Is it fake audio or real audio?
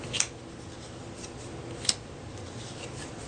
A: real